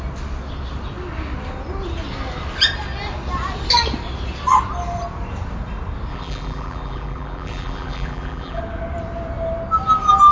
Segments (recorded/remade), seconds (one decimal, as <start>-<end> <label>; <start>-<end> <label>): 0.0-6.1 recorded; 6.1-8.6 remade; 8.6-10.3 recorded